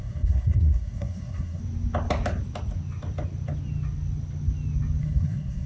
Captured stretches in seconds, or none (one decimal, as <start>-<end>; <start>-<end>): 1.6-5.0